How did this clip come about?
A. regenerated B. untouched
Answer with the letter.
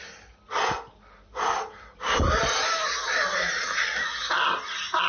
B